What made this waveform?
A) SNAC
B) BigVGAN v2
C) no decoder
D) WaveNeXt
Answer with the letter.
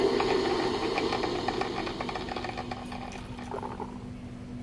C